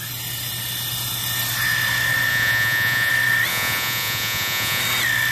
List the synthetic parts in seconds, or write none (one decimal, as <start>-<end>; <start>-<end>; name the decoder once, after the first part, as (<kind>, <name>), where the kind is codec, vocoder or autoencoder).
2.3-3.1 (vocoder, Vocos); 3.5-4.8